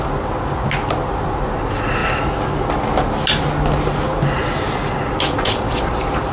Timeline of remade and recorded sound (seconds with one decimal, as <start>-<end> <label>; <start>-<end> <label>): 0.0-6.3 recorded